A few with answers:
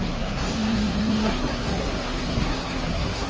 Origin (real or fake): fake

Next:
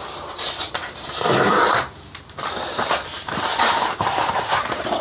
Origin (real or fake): fake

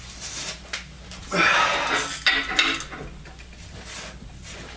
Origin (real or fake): real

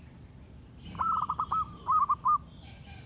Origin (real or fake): real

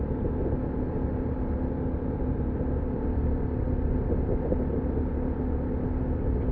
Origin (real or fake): real